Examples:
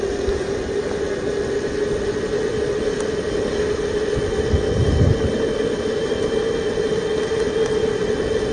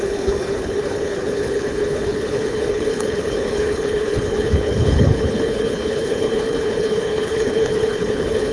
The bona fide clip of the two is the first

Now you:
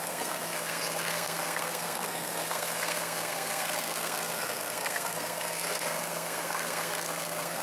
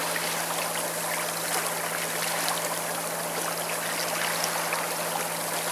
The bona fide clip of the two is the second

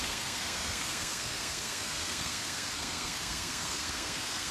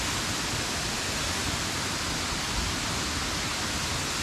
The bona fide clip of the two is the second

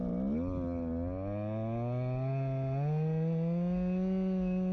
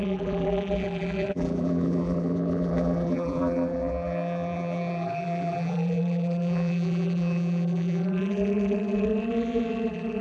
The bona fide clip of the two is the first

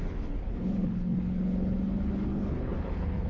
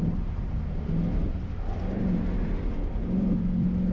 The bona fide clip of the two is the second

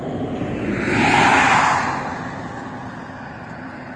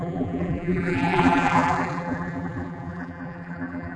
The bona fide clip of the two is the first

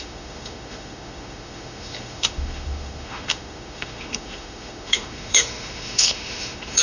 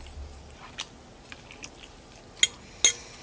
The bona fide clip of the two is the second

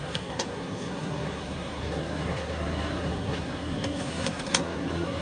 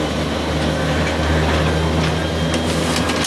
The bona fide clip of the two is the second